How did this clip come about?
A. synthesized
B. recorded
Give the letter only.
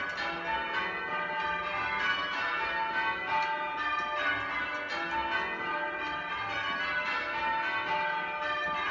B